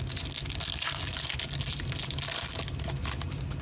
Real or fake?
real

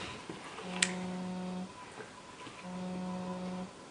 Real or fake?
real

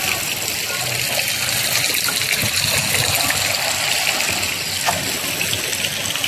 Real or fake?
real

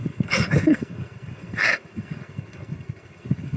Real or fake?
fake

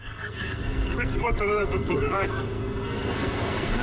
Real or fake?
fake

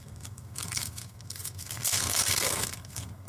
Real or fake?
fake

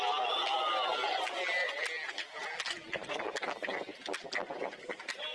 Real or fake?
real